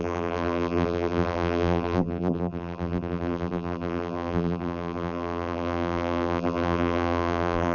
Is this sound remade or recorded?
remade